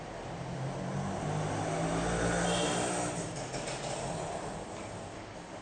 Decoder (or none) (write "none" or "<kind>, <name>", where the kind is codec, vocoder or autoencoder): none